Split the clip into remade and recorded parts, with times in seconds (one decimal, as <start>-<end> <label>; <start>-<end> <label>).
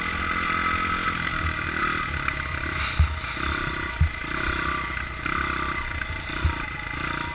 0.0-7.3 recorded